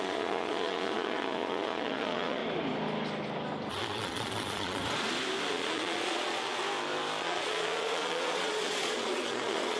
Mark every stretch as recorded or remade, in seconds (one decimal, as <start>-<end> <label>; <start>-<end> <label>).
0.0-2.4 remade; 2.4-3.7 recorded; 3.7-4.8 remade; 4.8-5.5 recorded; 5.5-6.6 remade; 6.6-7.2 recorded; 7.2-9.8 remade